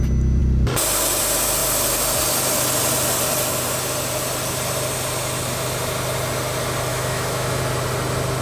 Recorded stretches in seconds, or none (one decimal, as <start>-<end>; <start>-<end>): 0.0-6.9; 7.6-8.4